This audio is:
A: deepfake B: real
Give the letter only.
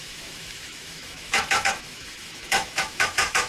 A